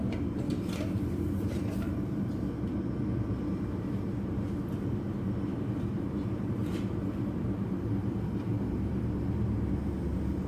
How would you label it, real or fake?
fake